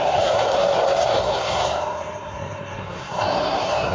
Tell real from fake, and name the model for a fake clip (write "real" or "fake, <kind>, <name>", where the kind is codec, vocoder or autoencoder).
fake, codec, SNAC